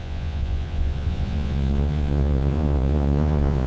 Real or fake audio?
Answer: fake